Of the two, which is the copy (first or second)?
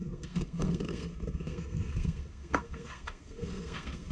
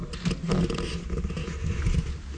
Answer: first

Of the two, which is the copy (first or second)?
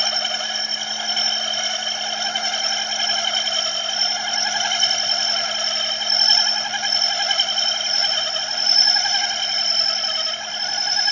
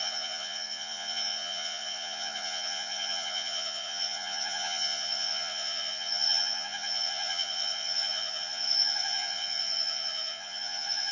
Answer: second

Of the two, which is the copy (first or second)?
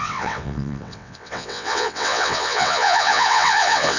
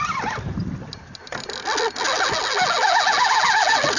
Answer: first